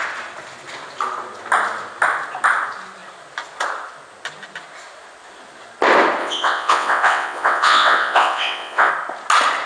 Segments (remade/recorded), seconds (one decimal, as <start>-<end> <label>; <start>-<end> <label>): 0.0-6.2 recorded; 6.2-8.9 remade; 8.9-9.7 recorded